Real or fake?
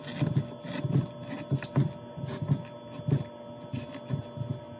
real